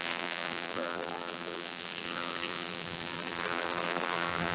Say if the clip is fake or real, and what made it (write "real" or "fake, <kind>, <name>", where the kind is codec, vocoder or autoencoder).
fake, vocoder, BigVGAN v2